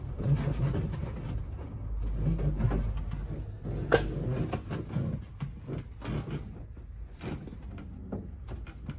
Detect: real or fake real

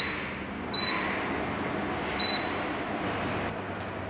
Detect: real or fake real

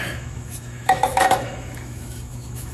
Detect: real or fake fake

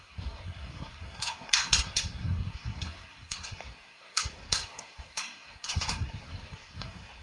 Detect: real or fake fake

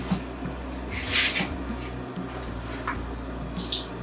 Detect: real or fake real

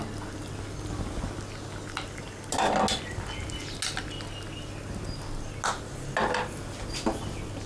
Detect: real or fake real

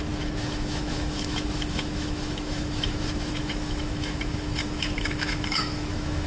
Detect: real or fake fake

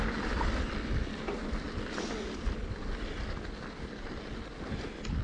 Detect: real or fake real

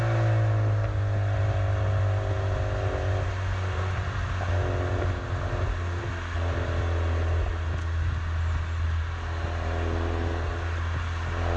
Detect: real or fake real